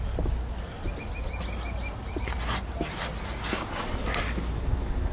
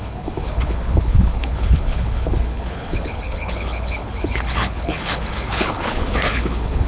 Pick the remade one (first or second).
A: second